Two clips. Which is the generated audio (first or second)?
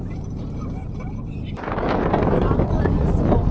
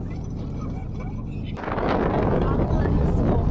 first